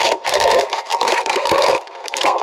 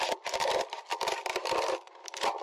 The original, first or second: second